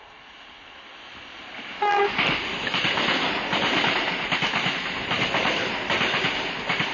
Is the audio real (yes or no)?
yes